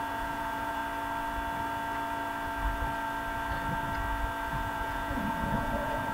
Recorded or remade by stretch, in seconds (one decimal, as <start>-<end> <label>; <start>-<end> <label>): 0.0-0.8 remade; 0.8-4.5 recorded; 4.5-6.1 remade